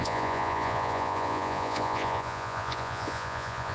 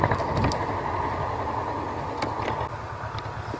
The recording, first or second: second